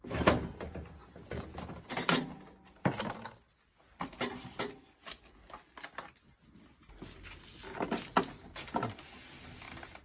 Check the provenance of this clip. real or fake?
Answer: real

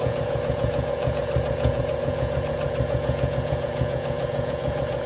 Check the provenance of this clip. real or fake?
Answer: fake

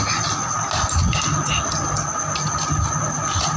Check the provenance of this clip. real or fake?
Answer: real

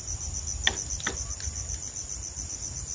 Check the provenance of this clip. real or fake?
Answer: real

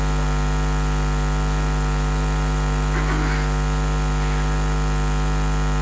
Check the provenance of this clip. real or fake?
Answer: real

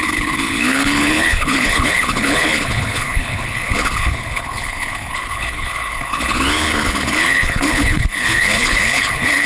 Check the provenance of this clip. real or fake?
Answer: fake